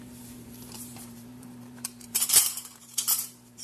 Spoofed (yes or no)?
yes